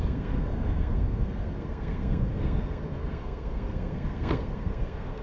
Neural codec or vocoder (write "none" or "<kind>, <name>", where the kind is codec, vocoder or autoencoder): codec, SNAC